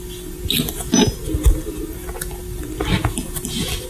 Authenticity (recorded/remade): recorded